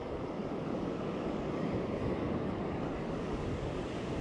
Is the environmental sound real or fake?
fake